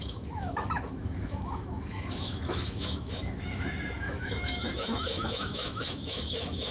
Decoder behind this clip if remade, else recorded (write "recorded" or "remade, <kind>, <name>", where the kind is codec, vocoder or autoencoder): remade, autoencoder, DAC-VAE